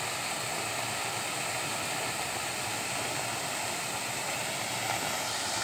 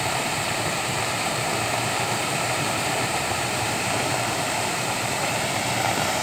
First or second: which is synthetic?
second